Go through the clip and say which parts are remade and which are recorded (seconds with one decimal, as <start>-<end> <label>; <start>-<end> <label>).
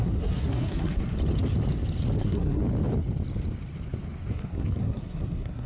0.0-1.0 remade; 1.0-2.2 recorded; 2.2-2.6 remade; 2.6-4.3 recorded; 4.3-5.7 remade